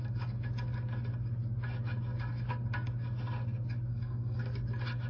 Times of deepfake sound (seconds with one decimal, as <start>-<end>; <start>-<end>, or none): 3.9-4.4